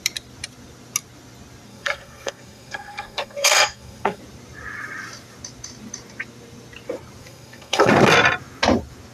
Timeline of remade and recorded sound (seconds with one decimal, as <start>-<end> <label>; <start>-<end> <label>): 0.0-1.7 recorded; 1.7-4.2 remade; 4.2-7.2 recorded; 7.2-7.9 remade; 7.9-9.1 recorded

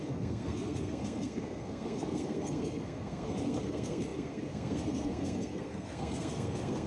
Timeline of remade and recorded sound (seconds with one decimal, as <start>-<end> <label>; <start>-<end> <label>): 0.0-6.9 remade